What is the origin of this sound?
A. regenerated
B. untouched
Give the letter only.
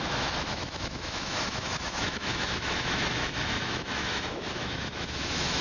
A